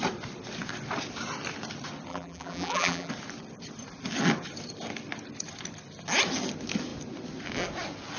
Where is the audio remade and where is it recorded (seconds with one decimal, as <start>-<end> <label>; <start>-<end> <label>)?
0.0-2.1 recorded; 2.1-3.1 remade; 3.1-8.2 recorded